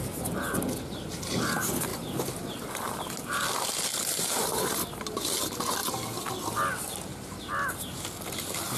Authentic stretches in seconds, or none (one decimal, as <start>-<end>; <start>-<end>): 0.0-8.8